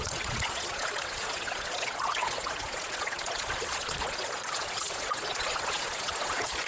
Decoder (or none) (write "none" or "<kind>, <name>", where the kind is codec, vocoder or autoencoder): vocoder, Vocos